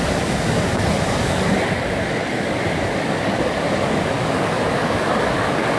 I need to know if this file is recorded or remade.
remade